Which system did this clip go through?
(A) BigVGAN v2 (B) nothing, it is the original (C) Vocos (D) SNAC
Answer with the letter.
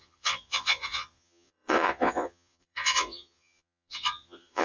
C